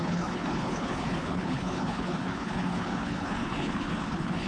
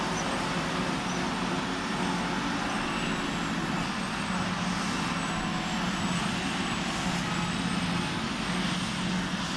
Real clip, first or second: second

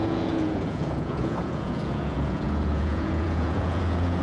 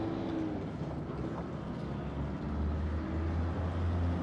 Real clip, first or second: second